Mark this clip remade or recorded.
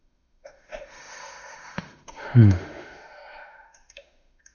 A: remade